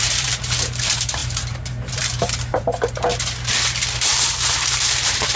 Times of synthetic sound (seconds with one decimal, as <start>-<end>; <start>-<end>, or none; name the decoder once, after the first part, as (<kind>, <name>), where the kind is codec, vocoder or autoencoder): 0.0-3.1 (vocoder, BigVGAN v2); 4.1-5.4